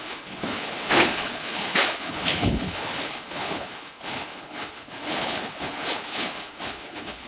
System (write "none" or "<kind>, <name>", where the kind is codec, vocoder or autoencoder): codec, HILCodec